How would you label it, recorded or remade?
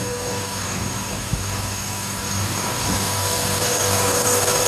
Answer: remade